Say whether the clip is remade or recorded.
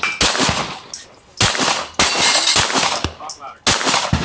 recorded